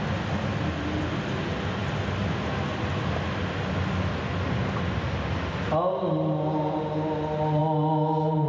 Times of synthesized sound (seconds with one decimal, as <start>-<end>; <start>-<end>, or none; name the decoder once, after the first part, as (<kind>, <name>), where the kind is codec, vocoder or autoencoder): none